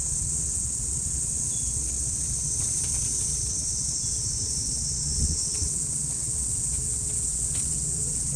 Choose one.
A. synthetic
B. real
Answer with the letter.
A